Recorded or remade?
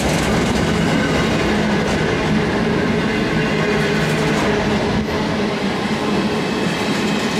recorded